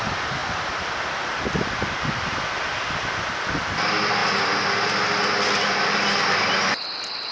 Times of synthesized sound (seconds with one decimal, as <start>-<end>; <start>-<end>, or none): none